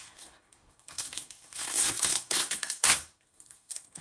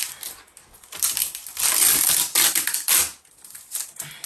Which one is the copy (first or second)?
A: first